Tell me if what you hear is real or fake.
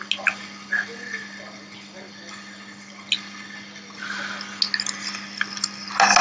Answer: real